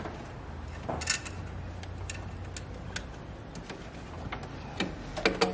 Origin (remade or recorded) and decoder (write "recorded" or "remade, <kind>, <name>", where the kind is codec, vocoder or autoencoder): recorded